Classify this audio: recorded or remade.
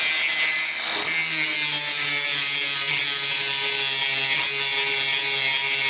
recorded